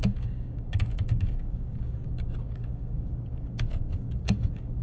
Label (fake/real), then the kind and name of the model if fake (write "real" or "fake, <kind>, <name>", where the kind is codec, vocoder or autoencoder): fake, codec, DAC